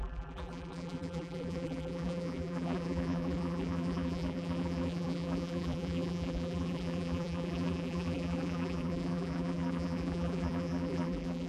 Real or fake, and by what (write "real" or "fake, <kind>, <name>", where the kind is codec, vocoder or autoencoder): fake, vocoder, BigVGAN v2